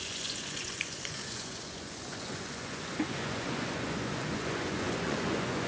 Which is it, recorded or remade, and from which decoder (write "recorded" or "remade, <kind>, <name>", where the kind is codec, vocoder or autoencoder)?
remade, vocoder, Vocos